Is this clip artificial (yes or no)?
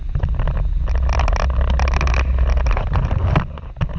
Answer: no